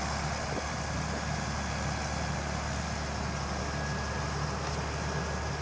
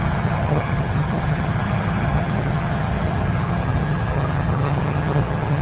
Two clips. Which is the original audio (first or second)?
first